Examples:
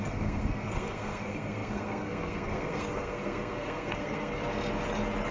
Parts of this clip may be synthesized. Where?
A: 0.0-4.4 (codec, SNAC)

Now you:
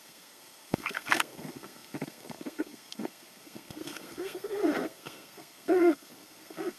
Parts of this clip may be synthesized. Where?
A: 0.0-6.8 (codec, SNAC)